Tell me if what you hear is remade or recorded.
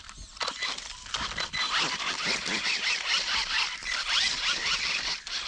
recorded